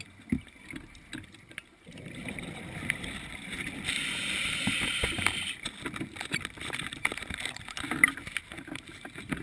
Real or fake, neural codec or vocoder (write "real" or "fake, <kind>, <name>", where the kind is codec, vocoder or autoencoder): fake, vocoder, BigVGAN v2